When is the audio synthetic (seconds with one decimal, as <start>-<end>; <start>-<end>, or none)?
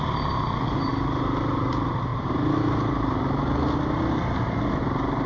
none